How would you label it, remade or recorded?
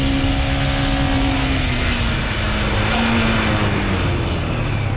recorded